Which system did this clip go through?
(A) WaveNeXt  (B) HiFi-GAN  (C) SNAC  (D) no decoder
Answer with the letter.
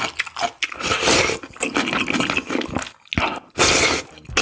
D